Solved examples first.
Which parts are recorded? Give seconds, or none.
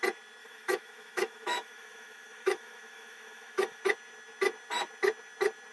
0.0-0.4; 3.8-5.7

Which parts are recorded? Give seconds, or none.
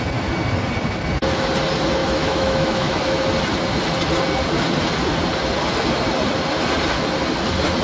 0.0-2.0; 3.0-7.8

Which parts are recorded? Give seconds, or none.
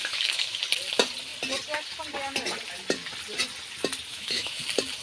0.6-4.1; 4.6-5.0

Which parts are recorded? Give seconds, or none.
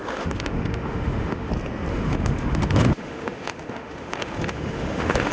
1.5-1.9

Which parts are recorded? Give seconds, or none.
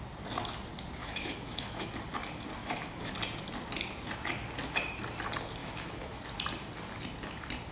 0.0-1.0; 1.9-2.6; 3.1-5.6; 6.2-7.7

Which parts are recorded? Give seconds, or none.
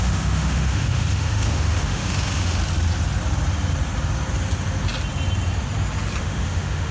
2.6-6.2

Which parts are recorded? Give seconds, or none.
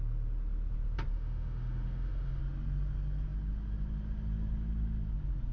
0.0-1.1; 2.4-5.5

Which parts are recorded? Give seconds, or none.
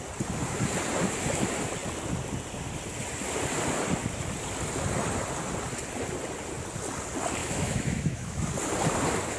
0.0-7.4; 8.5-9.4